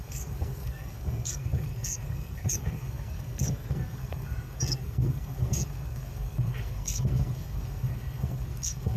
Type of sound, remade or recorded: remade